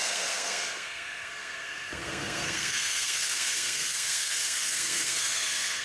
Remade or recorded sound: remade